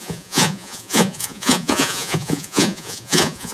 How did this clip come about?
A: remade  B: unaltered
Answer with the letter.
A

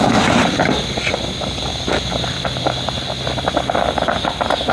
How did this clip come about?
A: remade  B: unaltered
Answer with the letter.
B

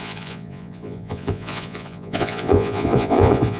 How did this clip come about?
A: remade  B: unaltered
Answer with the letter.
A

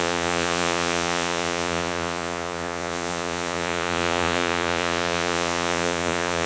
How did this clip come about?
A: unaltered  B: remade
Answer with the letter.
B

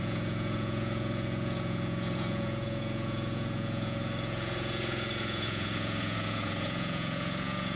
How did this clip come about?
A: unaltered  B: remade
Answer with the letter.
B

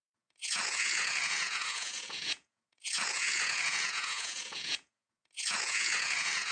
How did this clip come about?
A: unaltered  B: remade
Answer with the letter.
B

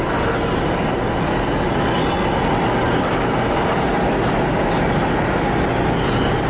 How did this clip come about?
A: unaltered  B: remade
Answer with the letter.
A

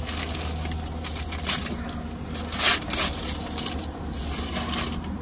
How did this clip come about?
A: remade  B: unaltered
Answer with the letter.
B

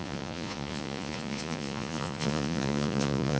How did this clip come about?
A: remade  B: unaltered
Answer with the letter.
A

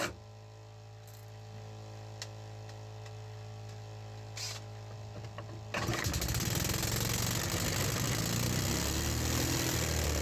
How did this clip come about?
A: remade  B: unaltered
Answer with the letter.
B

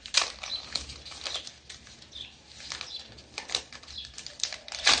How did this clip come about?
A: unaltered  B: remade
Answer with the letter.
A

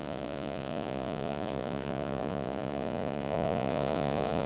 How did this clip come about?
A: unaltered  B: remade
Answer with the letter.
B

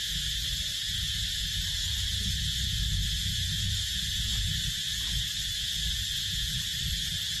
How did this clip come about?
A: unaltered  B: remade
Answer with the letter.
B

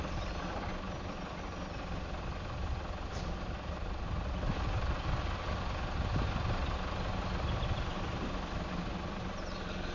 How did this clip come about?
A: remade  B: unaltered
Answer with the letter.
B